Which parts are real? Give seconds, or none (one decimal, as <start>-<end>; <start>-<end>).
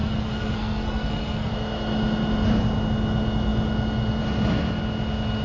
1.5-5.4